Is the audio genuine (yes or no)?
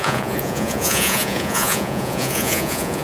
no